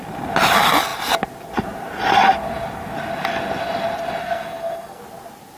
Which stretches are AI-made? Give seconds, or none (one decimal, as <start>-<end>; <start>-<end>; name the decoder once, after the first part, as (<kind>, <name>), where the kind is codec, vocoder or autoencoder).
4.2-5.0 (codec, SNAC)

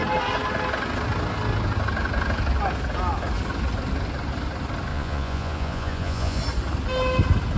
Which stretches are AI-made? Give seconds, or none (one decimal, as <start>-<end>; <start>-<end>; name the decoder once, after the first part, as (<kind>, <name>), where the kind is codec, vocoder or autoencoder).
4.9-6.4 (vocoder, Vocos)

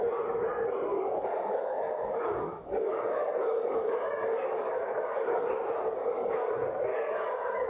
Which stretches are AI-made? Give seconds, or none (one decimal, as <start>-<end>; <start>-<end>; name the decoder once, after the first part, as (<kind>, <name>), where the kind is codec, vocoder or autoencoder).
0.9-5.5 (codec, DAC); 6.0-6.5; 6.9-7.7

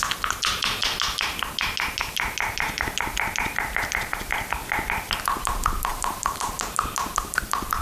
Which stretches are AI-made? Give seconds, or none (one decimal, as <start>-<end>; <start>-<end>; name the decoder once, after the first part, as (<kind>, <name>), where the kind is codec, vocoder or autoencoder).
5.9-6.6 (vocoder, BigVGAN v2)

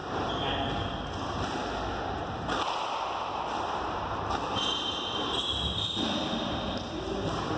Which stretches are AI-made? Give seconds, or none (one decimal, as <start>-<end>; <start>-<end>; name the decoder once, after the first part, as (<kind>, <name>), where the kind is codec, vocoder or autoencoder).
none

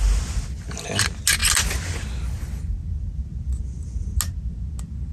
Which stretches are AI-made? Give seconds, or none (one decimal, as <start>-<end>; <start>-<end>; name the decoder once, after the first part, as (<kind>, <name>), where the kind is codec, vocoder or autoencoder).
none